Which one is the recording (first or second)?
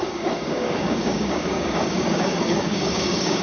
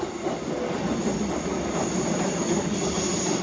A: second